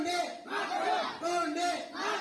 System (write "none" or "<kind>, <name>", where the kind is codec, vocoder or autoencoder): none